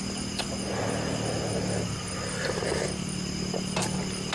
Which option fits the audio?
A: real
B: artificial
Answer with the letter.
A